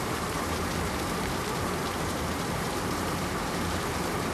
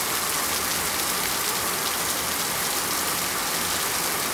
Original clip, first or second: second